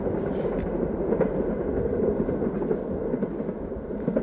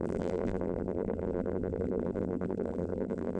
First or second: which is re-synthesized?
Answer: second